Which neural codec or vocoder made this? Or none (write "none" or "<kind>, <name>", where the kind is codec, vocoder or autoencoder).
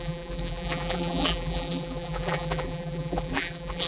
vocoder, BigVGAN v2